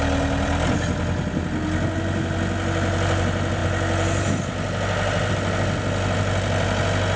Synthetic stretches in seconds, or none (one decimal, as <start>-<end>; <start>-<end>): none